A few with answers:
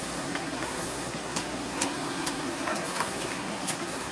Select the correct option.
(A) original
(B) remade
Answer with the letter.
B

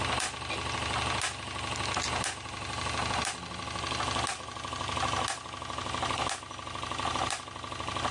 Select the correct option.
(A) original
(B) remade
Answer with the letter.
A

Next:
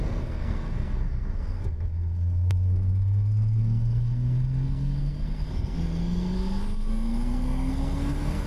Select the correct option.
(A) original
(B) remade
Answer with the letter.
B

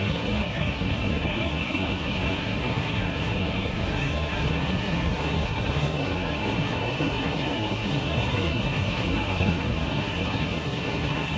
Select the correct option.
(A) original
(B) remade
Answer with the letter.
B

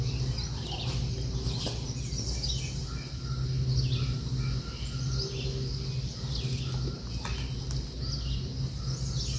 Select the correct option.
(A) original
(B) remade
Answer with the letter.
A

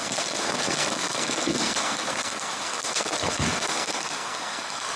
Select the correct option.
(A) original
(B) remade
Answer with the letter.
B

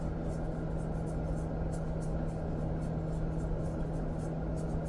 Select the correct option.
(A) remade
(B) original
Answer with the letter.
B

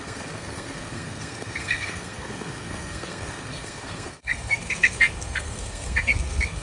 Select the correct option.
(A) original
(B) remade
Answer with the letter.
B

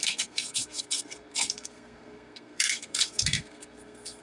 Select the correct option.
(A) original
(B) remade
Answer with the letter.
B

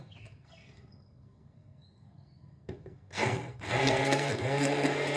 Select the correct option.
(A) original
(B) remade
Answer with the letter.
B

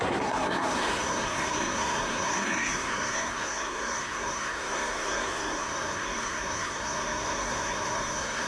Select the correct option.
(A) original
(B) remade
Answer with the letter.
B